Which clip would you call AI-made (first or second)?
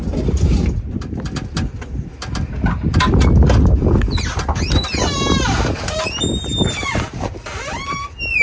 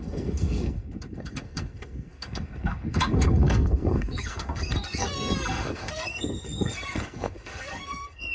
second